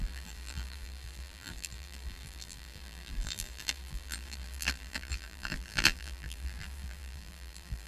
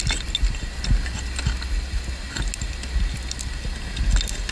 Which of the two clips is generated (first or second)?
first